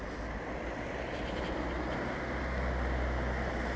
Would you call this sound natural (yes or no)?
yes